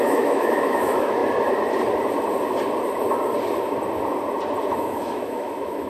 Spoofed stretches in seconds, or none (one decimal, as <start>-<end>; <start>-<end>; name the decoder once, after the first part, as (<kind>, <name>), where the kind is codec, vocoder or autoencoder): 0.0-1.2 (autoencoder, DAC-VAE); 4.7-5.9